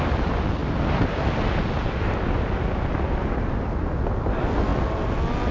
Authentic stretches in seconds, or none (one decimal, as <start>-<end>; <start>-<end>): 0.0-5.5